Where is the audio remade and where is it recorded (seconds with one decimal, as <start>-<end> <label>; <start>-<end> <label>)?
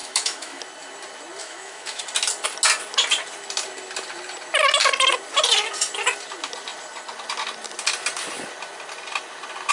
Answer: 0.0-0.6 remade; 0.6-1.4 recorded; 1.4-2.0 remade; 2.0-9.7 recorded